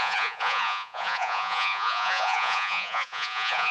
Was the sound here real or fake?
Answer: fake